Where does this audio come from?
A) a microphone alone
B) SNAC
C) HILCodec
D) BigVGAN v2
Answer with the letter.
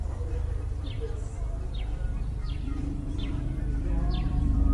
D